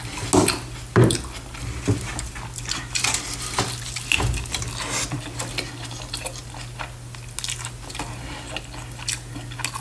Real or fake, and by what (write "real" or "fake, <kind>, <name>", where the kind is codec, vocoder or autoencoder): real